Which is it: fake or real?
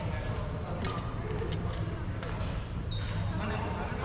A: real